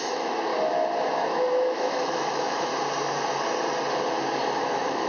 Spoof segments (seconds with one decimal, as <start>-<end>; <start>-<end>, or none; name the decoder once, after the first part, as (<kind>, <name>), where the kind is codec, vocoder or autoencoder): 0.0-0.5 (autoencoder, DAC-VAE); 1.1-2.7; 4.6-5.1

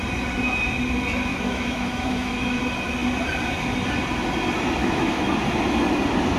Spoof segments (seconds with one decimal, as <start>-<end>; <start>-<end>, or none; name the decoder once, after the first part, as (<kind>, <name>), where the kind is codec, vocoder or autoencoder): 1.3-2.6 (autoencoder, DAC-VAE); 4.8-5.3

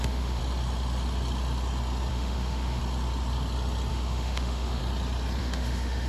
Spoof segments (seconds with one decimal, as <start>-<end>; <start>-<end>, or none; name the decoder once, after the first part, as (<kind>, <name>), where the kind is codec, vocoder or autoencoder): 0.0-0.4 (autoencoder, DAC-VAE); 2.1-2.8; 3.9-4.8; 5.4-6.1

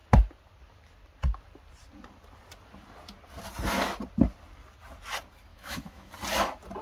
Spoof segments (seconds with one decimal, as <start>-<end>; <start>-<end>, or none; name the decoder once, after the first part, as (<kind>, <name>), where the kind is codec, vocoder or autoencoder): 5.5-6.1 (autoencoder, DAC-VAE)

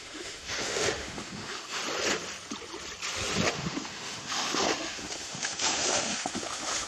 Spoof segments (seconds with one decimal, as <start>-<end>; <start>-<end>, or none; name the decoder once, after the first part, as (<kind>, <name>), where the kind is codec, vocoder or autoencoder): 0.0-1.8 (autoencoder, DAC-VAE); 3.5-6.9

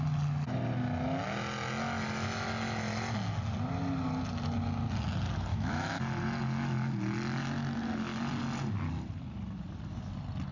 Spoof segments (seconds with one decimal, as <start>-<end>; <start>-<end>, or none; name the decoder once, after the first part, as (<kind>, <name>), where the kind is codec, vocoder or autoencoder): 5.5-6.0 (autoencoder, DAC-VAE)

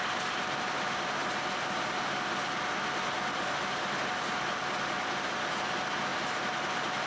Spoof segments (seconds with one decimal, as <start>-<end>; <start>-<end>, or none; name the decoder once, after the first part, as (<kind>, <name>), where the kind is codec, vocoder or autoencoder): none

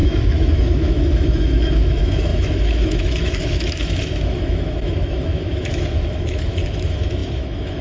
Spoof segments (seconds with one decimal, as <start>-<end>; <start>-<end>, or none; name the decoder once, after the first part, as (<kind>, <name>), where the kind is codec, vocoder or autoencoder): 0.0-7.8 (autoencoder, DAC-VAE)